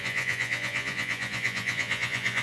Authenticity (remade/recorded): remade